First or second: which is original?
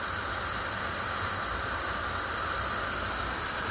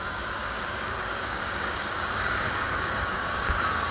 first